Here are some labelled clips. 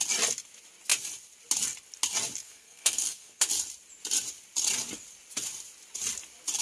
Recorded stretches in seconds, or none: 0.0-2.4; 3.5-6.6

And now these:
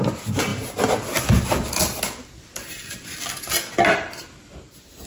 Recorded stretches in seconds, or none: 0.0-5.1